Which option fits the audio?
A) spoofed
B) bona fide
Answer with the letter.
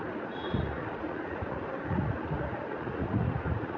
A